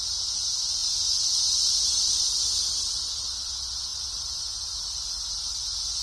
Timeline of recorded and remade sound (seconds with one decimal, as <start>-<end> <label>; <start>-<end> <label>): 0.0-6.0 recorded